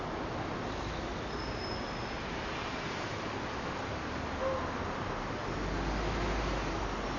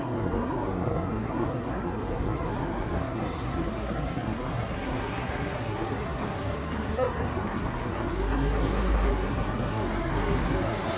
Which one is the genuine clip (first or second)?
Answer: first